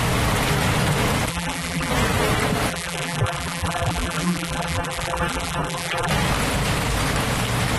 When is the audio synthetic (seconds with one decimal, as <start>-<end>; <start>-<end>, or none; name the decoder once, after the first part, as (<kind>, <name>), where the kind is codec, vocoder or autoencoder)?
1.3-1.9 (vocoder, BigVGAN v2); 2.7-6.1

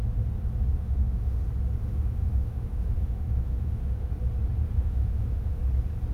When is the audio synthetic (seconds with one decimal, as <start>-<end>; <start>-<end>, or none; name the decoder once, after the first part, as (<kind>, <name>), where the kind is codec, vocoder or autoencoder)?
0.8-1.4 (autoencoder, DAC-VAE); 1.8-4.1; 4.7-5.6

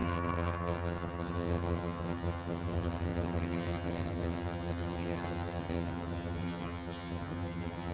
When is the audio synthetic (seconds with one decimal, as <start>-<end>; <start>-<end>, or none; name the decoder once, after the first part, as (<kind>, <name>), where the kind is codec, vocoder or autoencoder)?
0.0-7.9 (vocoder, HiFi-GAN)

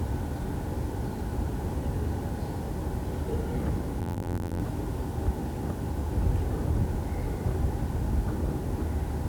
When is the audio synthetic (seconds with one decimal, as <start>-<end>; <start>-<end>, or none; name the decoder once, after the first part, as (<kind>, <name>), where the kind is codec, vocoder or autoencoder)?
4.0-4.6 (vocoder, BigVGAN v2)

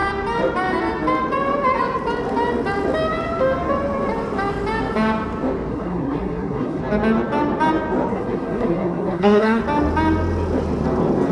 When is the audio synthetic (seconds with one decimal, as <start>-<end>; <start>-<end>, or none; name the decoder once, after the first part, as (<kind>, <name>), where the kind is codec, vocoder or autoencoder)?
5.7-6.8 (codec, SNAC); 8.1-9.6

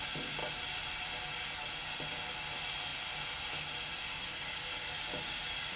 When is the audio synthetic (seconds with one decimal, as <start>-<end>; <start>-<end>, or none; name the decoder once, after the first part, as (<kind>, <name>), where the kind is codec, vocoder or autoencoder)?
none